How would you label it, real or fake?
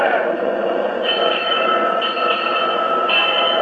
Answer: fake